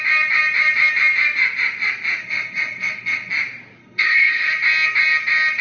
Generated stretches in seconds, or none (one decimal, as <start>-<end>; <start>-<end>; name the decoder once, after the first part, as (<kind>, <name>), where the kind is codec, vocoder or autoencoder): 2.2-3.3 (codec, HILCodec); 3.8-4.5